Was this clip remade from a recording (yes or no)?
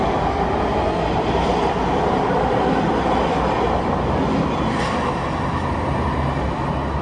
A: no